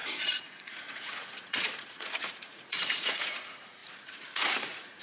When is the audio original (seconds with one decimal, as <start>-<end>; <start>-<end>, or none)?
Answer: none